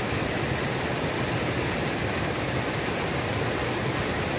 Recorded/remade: recorded